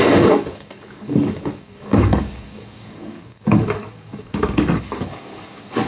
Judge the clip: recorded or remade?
remade